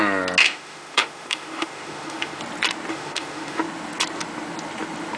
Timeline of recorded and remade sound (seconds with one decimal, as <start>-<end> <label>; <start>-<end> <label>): 0.0-0.4 recorded; 0.4-2.4 remade; 2.4-2.9 recorded; 2.9-3.6 remade; 3.6-5.2 recorded